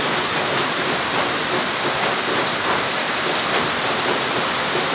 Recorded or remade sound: remade